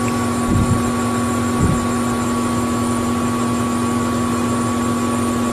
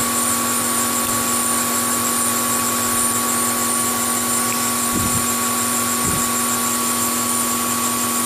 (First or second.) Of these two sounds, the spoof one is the second